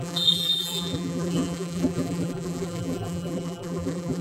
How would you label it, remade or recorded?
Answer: remade